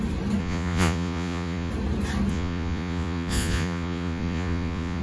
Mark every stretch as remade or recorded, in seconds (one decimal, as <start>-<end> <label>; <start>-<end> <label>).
0.0-0.4 recorded; 0.4-1.7 remade; 1.7-2.3 recorded; 2.3-5.0 remade